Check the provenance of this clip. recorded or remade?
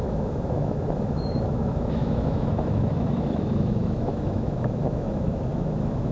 remade